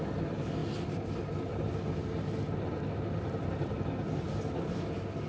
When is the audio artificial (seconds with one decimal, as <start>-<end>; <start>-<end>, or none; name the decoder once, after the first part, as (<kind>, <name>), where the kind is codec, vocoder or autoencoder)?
none